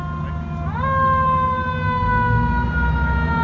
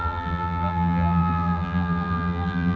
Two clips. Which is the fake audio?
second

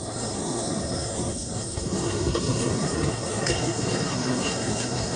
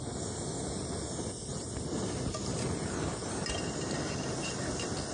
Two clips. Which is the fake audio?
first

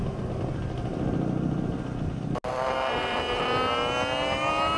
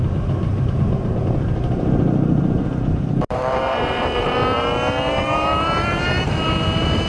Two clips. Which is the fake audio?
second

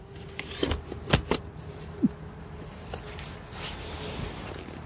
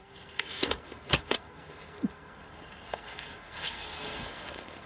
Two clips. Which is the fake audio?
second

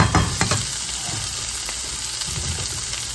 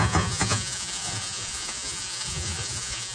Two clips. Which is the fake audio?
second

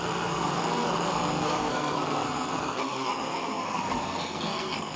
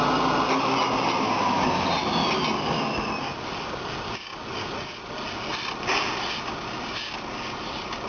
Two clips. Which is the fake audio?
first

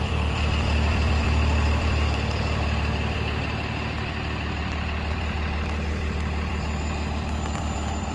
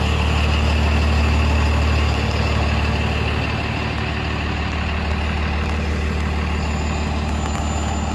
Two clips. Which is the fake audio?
first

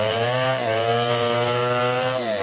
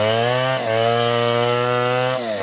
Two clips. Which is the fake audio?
first